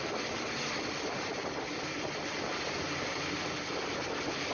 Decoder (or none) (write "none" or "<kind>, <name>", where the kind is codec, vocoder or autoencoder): none